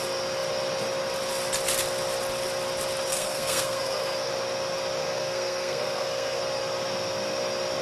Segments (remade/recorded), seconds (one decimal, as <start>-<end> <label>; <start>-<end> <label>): 0.0-3.1 recorded; 3.1-4.3 remade; 4.3-5.0 recorded; 5.0-6.4 remade; 6.4-7.8 recorded